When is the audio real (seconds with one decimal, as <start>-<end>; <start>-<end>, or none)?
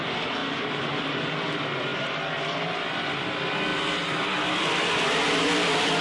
0.0-0.4; 1.0-1.9; 3.2-3.7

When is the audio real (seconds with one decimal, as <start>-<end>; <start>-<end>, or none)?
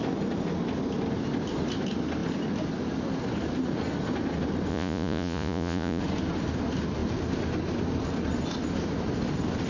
0.0-4.7; 6.0-9.7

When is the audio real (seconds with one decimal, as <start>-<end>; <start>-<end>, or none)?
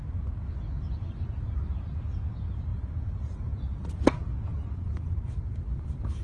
0.0-2.7; 3.9-4.5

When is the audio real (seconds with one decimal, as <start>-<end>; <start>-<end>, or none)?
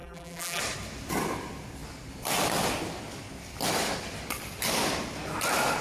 0.6-5.8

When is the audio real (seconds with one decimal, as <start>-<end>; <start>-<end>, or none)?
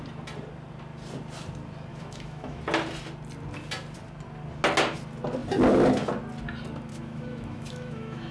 0.0-1.9; 2.6-6.9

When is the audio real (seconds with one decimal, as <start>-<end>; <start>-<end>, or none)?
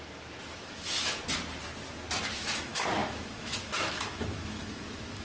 1.2-2.3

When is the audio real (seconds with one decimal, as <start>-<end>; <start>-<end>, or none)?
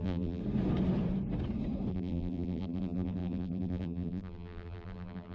0.4-1.9